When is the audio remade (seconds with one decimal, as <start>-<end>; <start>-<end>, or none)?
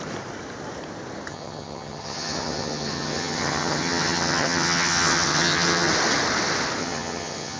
1.3-5.9; 6.8-7.6